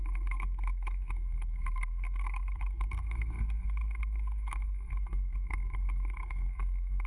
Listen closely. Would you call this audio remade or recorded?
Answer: remade